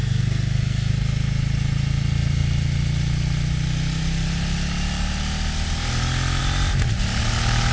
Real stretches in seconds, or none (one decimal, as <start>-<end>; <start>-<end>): 0.9-7.7